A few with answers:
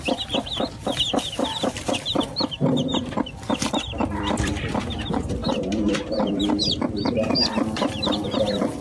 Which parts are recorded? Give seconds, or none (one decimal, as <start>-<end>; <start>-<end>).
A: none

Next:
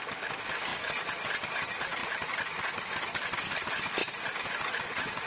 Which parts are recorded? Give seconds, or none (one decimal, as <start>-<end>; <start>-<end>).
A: 0.0-2.0; 3.6-5.3

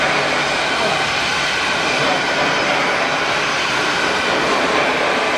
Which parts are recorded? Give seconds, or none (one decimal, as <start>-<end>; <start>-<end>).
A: 0.0-1.3; 2.7-5.4

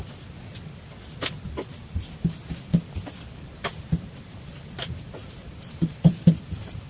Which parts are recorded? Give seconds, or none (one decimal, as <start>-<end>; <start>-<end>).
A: 0.0-5.2; 6.4-6.9

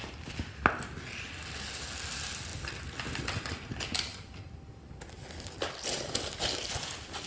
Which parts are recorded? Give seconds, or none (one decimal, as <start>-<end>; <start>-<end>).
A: 0.6-4.1; 6.4-7.3

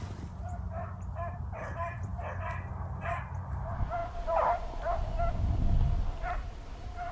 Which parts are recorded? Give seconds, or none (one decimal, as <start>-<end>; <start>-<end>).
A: 2.1-2.7